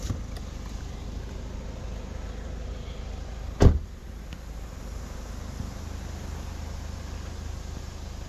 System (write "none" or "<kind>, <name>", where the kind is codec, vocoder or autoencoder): none